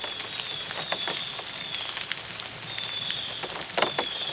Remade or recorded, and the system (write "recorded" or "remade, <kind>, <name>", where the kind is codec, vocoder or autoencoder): recorded